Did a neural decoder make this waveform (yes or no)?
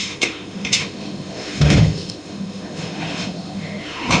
yes